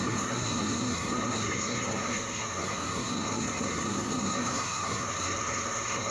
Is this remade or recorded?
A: remade